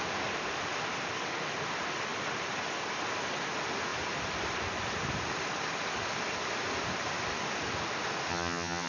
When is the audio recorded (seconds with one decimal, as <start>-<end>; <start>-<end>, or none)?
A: 0.0-8.3